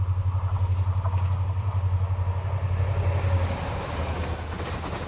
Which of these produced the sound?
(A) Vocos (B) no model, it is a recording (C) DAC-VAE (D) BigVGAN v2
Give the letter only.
B